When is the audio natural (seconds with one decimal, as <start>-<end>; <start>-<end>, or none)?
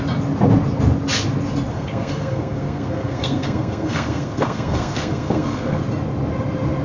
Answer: 0.0-1.7; 5.8-6.8